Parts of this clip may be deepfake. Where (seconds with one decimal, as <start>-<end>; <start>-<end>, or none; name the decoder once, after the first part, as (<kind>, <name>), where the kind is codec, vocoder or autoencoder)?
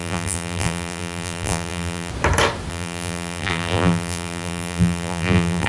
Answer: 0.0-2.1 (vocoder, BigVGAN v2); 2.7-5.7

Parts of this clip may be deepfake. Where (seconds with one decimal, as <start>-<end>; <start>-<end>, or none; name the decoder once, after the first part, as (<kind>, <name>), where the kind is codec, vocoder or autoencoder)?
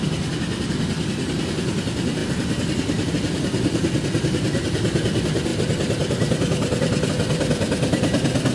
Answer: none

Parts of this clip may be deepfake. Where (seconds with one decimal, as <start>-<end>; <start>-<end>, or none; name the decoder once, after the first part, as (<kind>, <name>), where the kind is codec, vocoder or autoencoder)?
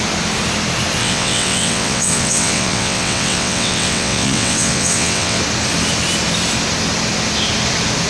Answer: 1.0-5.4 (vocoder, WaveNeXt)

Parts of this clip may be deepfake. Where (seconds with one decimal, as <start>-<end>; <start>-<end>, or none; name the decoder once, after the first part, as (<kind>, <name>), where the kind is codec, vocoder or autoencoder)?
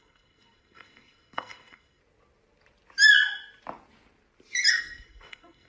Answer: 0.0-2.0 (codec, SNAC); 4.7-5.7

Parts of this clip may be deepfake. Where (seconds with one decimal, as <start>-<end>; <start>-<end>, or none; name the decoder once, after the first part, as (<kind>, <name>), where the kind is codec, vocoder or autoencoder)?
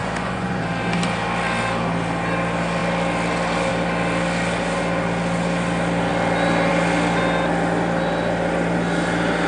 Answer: 0.0-0.6 (vocoder, Vocos)